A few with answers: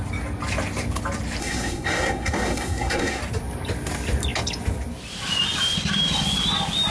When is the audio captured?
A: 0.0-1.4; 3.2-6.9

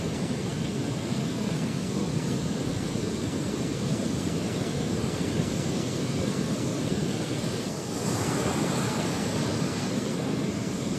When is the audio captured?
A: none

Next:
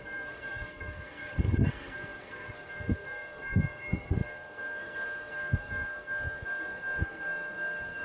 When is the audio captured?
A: none